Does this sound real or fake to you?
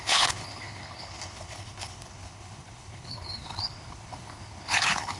fake